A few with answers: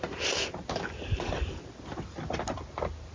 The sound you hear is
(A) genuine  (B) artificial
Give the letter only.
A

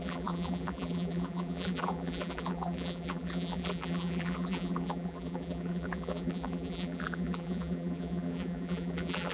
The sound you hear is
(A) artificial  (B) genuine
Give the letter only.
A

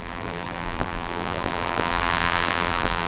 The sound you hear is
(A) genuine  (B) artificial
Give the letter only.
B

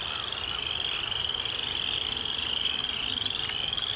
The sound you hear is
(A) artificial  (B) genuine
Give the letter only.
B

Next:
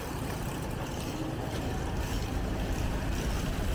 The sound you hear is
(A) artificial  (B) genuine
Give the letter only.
B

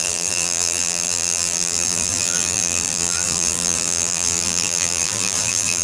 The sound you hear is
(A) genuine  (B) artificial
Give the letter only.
B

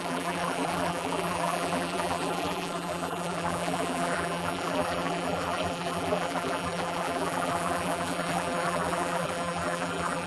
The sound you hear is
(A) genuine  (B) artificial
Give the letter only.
B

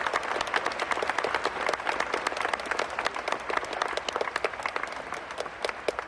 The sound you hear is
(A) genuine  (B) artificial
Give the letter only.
A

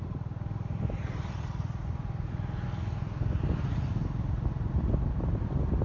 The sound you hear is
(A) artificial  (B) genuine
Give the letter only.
B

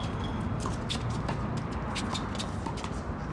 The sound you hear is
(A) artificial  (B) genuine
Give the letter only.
B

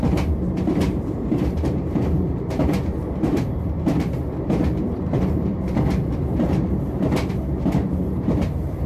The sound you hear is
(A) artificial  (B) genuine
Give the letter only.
A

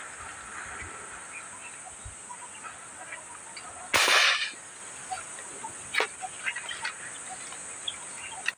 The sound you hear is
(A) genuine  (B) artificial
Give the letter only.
A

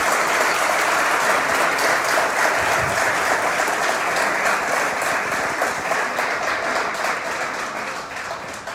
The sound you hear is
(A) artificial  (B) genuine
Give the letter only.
B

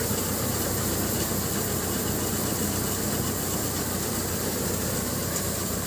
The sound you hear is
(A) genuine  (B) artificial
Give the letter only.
B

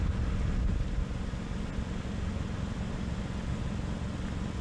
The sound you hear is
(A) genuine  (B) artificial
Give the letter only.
A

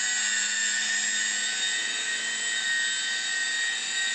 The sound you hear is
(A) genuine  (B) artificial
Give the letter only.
A